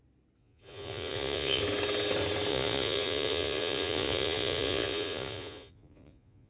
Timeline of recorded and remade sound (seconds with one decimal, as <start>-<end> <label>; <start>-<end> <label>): 0.0-0.4 recorded; 0.4-1.6 remade; 1.6-2.5 recorded; 2.5-6.5 remade